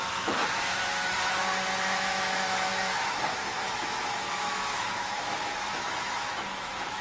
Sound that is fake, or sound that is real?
fake